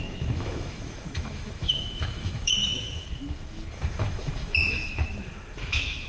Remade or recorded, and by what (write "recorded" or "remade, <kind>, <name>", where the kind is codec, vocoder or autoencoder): remade, autoencoder, DAC-VAE